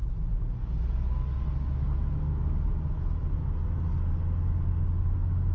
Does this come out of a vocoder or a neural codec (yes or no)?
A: no